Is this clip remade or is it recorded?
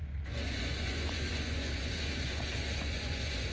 remade